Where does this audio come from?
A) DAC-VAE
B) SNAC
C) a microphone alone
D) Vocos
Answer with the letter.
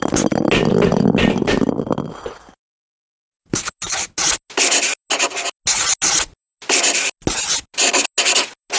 C